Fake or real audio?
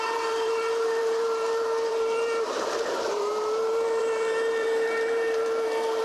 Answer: fake